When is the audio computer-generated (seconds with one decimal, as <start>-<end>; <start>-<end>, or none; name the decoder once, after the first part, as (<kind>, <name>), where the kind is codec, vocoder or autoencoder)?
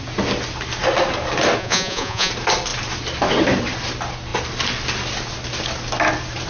1.6-2.3 (vocoder, Vocos)